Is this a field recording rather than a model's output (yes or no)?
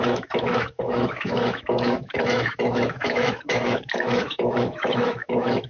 no